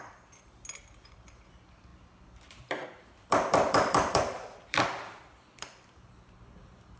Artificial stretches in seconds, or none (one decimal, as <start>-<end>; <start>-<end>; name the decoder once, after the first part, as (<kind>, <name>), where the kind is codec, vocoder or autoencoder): 1.9-6.1 (vocoder, BigVGAN v2)